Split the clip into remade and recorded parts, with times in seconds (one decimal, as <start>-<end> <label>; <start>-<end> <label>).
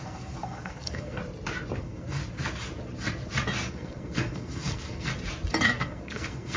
0.0-1.2 remade; 1.2-1.8 recorded; 1.8-2.2 remade; 2.2-3.7 recorded; 3.7-5.1 remade; 5.1-5.6 recorded; 5.6-6.6 remade